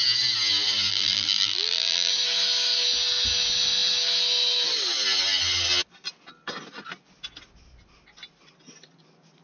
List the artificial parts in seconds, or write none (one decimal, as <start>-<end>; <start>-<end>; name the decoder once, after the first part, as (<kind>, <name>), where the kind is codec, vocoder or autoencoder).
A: 0.9-2.1 (vocoder, BigVGAN v2)